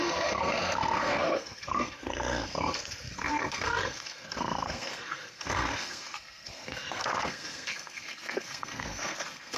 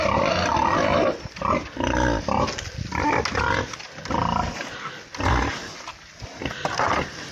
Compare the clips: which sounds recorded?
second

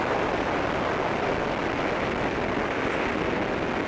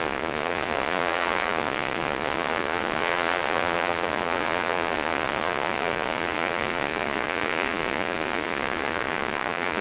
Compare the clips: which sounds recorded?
first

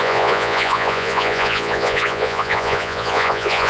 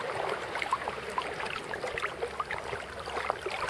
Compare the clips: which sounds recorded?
second